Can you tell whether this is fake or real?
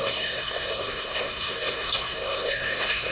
fake